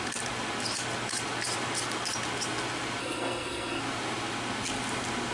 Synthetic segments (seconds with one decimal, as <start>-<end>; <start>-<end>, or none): 3.0-3.8